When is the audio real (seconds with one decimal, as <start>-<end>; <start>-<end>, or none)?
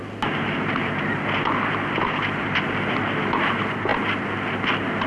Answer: 0.0-5.1